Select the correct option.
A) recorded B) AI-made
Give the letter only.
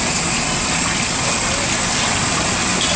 A